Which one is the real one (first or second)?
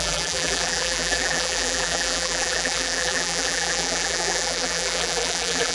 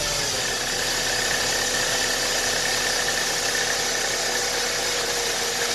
second